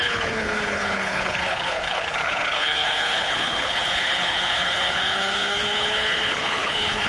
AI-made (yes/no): yes